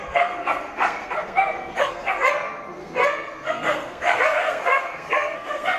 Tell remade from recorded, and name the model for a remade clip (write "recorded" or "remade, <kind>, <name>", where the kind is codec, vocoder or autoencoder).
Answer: remade, codec, SNAC